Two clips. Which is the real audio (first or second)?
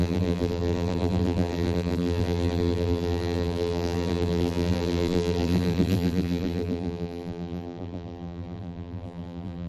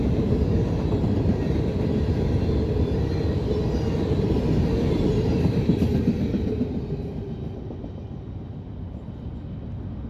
second